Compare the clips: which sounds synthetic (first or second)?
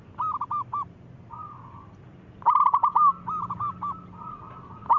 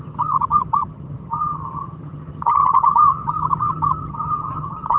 second